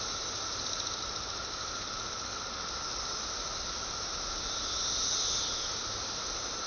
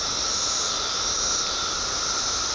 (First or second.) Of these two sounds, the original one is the first